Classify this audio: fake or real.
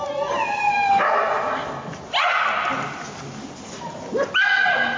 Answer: real